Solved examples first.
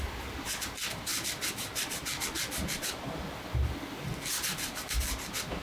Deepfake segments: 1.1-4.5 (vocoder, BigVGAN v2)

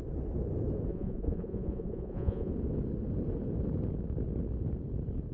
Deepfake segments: 0.9-2.5 (vocoder, Vocos)

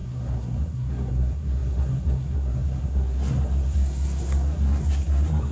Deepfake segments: 0.0-5.5 (codec, SNAC)

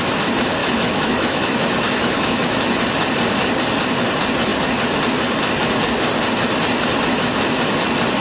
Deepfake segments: 0.6-2.6 (autoencoder, DAC-VAE)

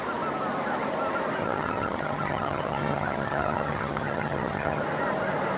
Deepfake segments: 1.4-4.8 (vocoder, HiFi-GAN)